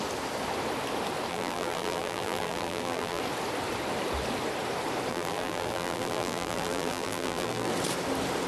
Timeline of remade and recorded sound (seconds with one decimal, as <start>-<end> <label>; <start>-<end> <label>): 0.0-1.3 recorded; 1.3-3.2 remade; 3.2-5.1 recorded; 5.1-7.7 remade; 7.7-8.5 recorded